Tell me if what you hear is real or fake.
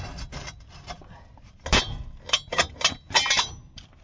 real